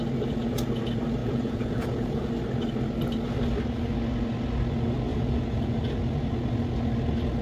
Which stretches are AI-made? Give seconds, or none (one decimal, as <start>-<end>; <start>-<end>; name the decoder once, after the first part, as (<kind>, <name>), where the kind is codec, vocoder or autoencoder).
1.2-2.3 (vocoder, Vocos); 5.1-5.8

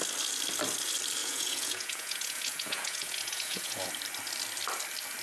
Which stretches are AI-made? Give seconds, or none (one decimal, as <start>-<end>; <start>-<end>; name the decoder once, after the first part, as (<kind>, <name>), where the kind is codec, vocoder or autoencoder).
1.2-3.9 (vocoder, Vocos)